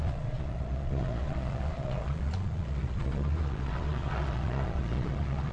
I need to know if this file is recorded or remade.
remade